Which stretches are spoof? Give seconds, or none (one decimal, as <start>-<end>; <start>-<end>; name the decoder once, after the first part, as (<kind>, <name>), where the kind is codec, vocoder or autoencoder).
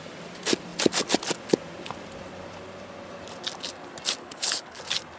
4.2-4.8 (codec, HILCodec)